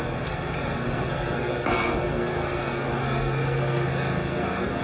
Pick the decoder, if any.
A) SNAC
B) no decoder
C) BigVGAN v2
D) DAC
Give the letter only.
A